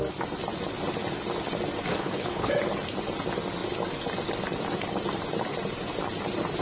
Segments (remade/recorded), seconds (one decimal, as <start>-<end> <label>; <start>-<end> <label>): 0.0-1.9 recorded; 1.9-2.5 remade; 2.5-6.6 recorded